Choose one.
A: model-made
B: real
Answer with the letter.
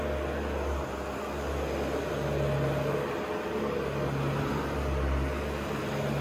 B